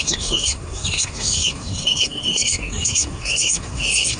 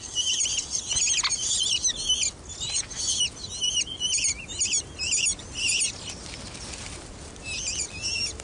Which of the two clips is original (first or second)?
second